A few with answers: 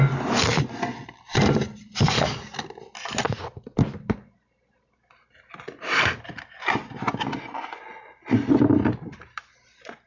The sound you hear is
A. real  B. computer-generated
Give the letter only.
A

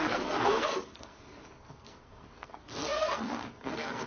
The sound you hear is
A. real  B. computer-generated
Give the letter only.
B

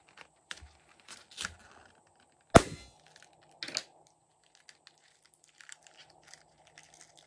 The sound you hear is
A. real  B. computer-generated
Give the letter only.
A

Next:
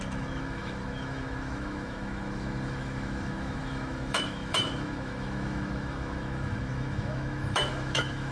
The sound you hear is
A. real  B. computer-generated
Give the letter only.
B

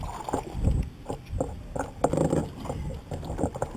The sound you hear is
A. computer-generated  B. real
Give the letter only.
B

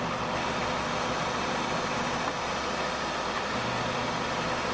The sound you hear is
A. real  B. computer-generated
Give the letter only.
A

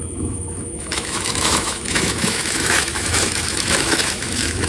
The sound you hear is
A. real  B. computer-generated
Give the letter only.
B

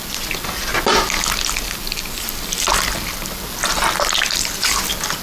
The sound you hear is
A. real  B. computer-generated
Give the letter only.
A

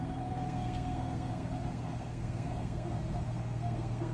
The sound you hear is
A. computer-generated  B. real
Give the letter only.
A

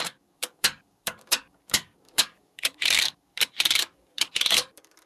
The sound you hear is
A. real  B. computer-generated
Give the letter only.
B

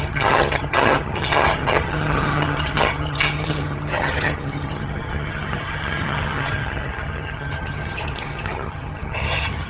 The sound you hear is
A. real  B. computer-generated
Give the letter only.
B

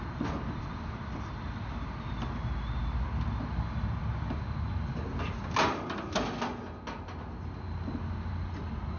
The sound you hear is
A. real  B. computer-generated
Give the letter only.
A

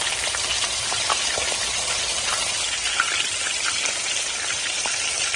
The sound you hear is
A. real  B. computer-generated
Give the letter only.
A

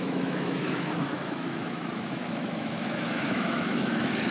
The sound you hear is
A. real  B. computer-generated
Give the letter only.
B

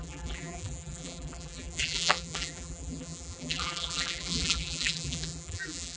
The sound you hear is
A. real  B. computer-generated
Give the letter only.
B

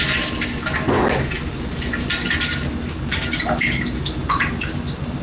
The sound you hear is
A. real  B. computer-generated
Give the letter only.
A